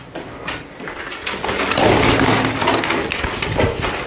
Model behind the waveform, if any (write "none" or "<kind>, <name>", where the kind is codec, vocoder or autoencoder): vocoder, BigVGAN v2